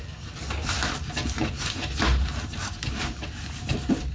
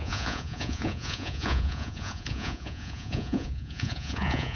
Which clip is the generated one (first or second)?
second